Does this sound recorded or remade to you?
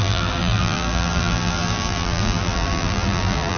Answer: remade